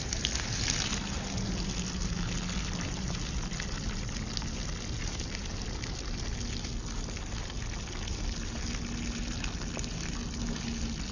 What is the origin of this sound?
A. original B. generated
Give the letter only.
A